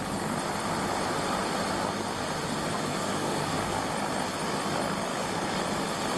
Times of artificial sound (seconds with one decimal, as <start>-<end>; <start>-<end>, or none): 2.9-3.8; 5.1-5.6